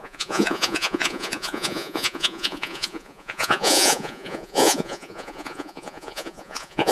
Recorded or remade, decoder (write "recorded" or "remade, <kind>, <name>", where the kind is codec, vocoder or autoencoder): remade, vocoder, Vocos